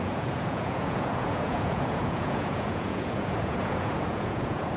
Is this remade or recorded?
remade